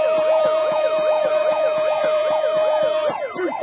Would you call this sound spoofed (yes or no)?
yes